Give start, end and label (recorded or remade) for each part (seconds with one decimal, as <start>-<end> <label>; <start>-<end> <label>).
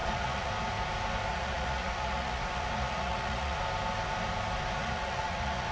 0.0-0.5 remade; 0.5-1.3 recorded; 1.3-3.6 remade; 3.6-4.8 recorded; 4.8-5.7 remade